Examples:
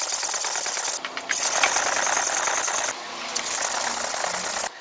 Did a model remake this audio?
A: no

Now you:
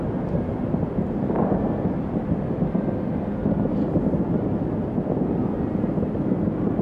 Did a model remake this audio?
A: no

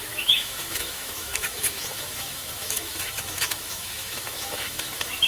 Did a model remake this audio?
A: yes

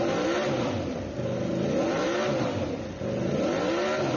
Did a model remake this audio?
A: no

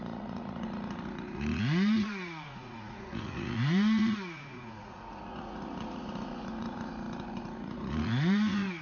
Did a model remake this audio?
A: yes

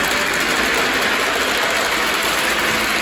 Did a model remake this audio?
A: no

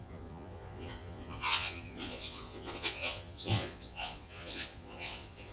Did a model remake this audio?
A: yes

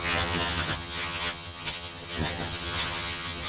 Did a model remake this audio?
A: yes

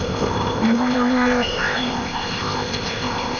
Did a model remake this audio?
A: yes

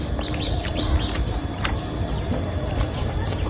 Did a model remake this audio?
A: no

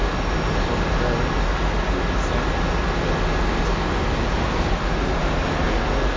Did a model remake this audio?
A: no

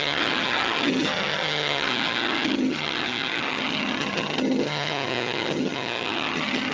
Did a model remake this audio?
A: yes